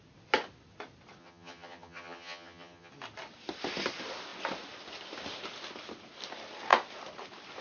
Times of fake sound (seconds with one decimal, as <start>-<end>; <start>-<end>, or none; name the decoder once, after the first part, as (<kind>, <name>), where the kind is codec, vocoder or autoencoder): 1.2-2.9 (vocoder, HiFi-GAN)